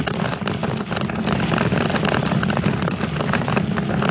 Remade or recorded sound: recorded